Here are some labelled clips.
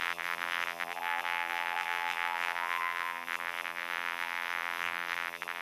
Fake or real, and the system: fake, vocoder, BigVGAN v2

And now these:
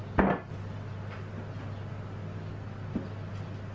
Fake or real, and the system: real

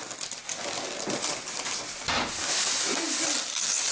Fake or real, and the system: real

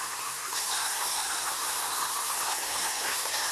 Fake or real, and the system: fake, codec, SNAC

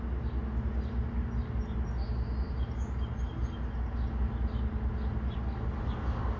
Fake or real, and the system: real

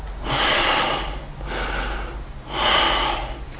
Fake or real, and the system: real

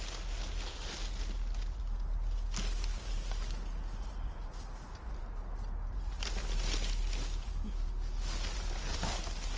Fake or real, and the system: real